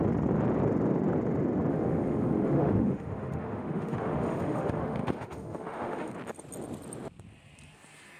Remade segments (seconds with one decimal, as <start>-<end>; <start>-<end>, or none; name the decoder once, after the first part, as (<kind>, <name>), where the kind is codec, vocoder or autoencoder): 1.7-6.1 (autoencoder, DAC-VAE)

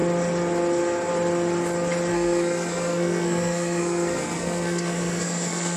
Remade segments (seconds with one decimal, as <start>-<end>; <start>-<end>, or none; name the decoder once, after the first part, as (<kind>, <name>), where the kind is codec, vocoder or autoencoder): 2.1-5.8 (codec, SNAC)